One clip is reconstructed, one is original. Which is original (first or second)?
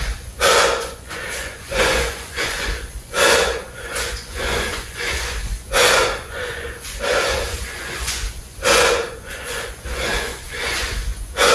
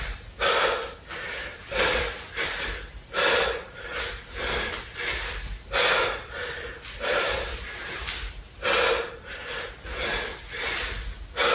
second